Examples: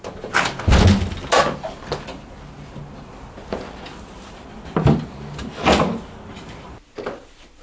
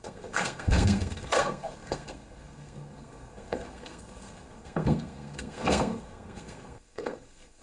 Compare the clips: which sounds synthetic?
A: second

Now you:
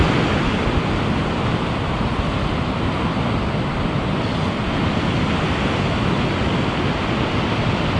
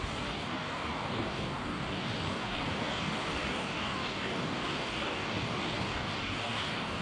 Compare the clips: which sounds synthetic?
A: second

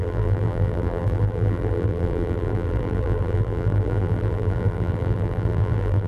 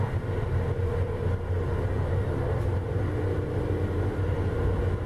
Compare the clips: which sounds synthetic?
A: first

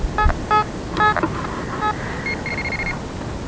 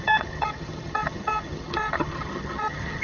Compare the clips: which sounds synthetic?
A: second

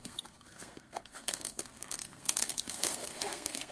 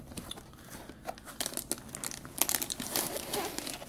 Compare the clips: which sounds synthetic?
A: first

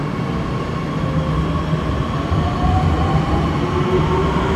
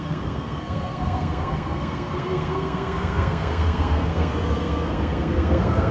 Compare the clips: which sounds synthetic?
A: second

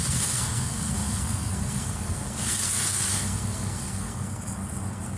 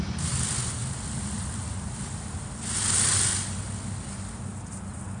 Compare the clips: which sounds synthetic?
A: first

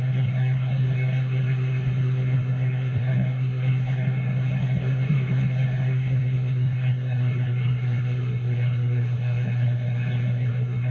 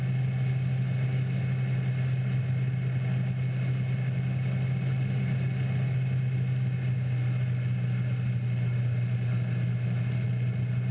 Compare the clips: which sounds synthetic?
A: first